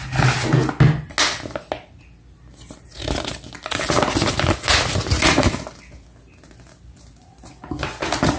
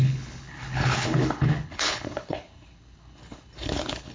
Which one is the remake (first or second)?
second